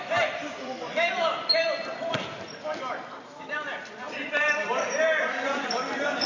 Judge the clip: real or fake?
fake